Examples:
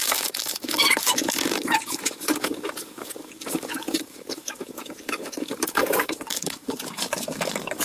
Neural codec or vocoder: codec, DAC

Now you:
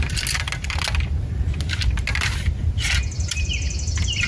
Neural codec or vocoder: none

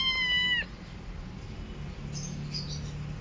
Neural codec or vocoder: none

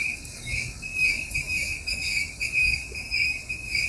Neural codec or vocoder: codec, DAC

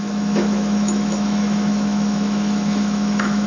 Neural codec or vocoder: autoencoder, DAC-VAE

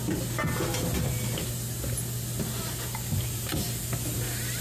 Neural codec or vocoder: none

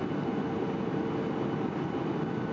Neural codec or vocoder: none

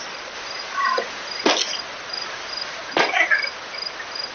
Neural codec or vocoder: none